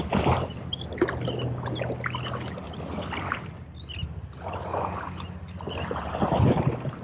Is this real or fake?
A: real